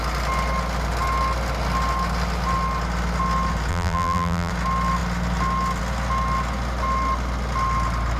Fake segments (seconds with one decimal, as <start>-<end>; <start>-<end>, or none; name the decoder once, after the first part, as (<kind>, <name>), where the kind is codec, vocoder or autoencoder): 3.7-4.5 (vocoder, BigVGAN v2)